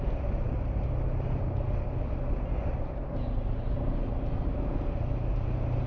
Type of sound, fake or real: real